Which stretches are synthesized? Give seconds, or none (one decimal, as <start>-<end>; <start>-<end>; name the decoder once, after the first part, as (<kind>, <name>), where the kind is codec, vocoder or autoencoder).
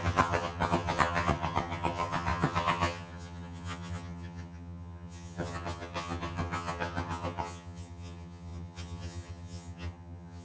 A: 0.0-10.4 (vocoder, HiFi-GAN)